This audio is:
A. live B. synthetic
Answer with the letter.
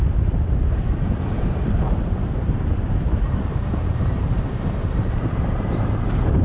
B